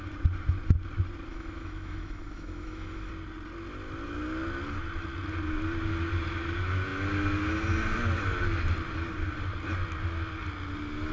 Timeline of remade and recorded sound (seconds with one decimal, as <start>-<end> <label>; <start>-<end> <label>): 0.0-1.3 recorded; 1.3-3.1 remade; 3.1-11.1 recorded

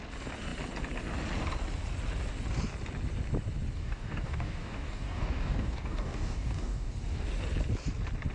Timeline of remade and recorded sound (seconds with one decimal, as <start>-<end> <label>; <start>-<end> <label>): 0.0-3.8 recorded; 3.8-6.9 remade; 6.9-8.3 recorded